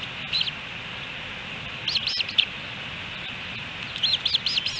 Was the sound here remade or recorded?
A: recorded